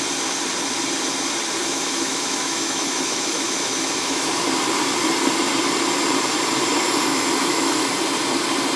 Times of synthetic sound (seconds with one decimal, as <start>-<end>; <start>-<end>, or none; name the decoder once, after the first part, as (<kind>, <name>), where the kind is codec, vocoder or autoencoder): 1.6-4.3 (autoencoder, DAC-VAE); 7.1-7.9